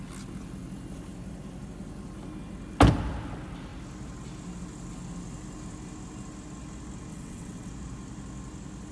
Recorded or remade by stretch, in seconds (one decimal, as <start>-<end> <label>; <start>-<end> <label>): 0.0-7.1 recorded; 7.1-7.7 remade; 7.7-8.9 recorded